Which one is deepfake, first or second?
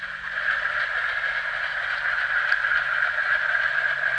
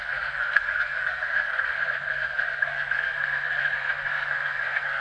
second